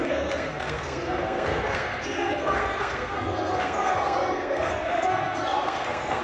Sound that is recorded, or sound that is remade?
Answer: remade